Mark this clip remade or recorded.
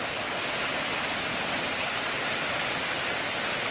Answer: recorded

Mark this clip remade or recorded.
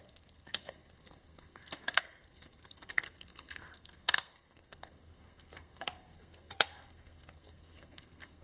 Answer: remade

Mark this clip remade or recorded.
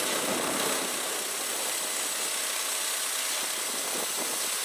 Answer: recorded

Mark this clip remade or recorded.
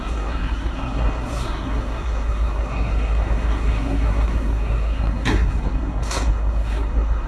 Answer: remade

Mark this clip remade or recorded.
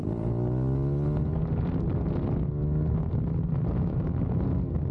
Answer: recorded